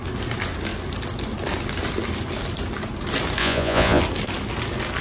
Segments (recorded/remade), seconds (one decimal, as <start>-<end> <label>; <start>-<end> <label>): 0.0-3.4 recorded; 3.4-4.0 remade; 4.0-5.0 recorded